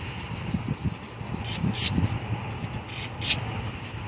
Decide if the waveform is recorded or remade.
recorded